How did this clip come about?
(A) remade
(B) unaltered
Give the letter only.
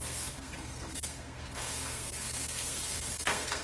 A